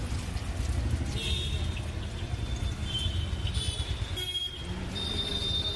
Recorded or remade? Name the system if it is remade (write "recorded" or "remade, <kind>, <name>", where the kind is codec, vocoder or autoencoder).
recorded